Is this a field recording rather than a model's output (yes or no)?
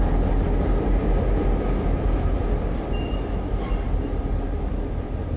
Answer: yes